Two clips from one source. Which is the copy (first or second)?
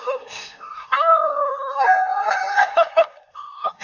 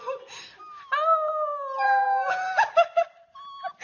first